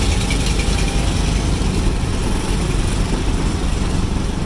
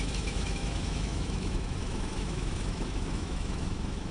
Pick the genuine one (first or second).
first